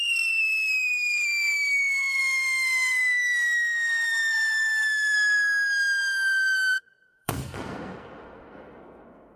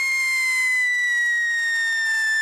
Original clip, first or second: second